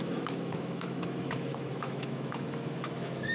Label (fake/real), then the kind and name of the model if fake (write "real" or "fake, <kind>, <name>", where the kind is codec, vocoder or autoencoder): fake, autoencoder, DAC-VAE